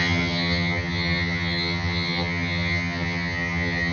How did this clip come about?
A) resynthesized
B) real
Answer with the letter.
A